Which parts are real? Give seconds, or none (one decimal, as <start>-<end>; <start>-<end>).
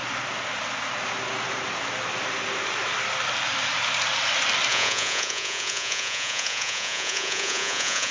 0.0-4.7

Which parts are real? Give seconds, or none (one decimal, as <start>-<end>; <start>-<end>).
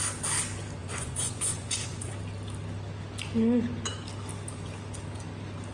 0.0-0.8; 2.1-5.7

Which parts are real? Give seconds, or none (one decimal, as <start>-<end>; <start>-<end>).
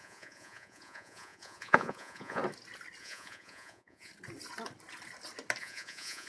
2.4-3.0; 4.1-5.6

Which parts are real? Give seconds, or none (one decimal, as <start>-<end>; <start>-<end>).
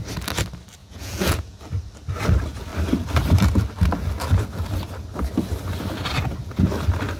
0.0-0.8; 1.6-7.2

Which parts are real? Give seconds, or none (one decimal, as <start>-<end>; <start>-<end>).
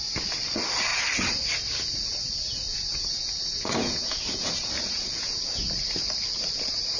0.0-2.7; 5.4-7.0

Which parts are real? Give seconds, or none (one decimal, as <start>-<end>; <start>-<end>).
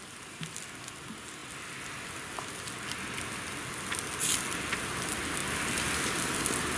0.0-6.8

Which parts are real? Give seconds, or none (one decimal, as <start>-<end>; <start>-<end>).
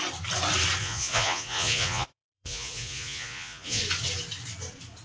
0.0-0.8; 3.8-5.0